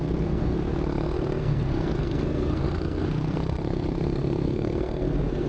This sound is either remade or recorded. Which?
remade